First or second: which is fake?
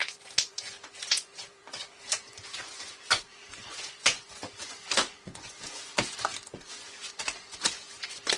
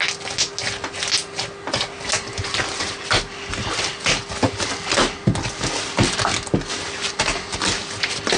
first